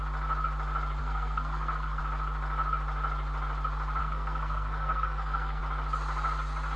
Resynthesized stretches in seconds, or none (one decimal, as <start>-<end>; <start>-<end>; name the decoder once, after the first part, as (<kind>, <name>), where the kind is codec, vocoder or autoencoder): 1.0-2.0 (codec, SNAC); 4.0-5.6